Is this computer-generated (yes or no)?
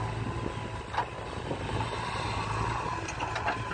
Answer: no